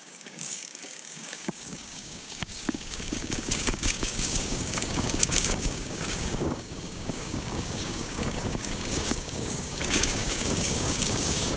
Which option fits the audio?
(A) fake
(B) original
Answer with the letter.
A